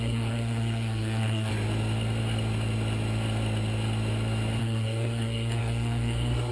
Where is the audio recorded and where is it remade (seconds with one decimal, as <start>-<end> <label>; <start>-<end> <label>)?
0.0-1.5 remade; 1.5-4.6 recorded; 4.6-6.5 remade

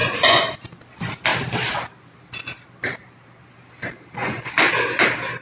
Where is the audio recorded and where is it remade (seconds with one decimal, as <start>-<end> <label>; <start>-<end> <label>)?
0.0-0.6 remade; 0.6-4.2 recorded; 4.2-4.7 remade; 4.7-5.4 recorded

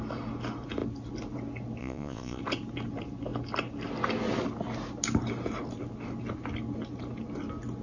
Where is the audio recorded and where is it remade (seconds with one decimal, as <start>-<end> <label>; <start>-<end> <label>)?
0.0-1.8 recorded; 1.8-2.4 remade; 2.4-7.8 recorded

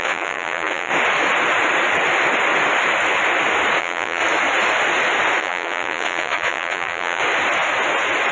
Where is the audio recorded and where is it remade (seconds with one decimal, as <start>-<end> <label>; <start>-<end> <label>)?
0.0-0.9 remade; 0.9-3.8 recorded; 3.8-4.2 remade; 4.2-5.4 recorded; 5.4-7.2 remade; 7.2-8.3 recorded

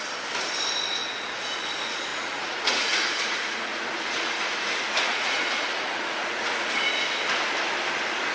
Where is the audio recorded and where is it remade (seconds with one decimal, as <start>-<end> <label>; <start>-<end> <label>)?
0.0-1.0 recorded; 1.0-1.6 remade; 1.6-2.1 recorded; 2.1-6.7 remade; 6.7-8.3 recorded